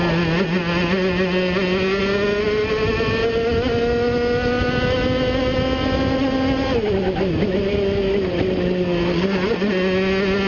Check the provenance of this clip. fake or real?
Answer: real